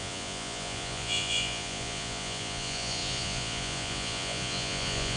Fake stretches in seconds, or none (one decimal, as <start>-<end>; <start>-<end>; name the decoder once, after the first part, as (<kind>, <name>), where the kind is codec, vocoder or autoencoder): 0.0-5.2 (vocoder, Vocos)